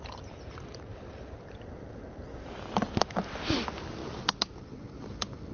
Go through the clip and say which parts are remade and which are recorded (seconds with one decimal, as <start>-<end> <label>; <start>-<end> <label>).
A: 0.0-5.5 recorded